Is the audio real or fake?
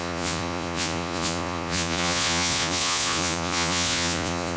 fake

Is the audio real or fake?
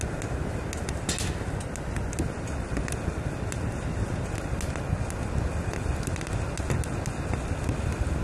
real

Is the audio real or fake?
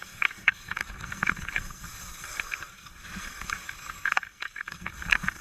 fake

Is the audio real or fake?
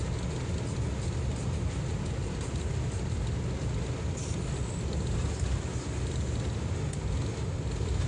real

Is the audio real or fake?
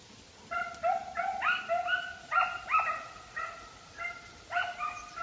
real